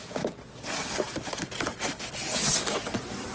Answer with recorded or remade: recorded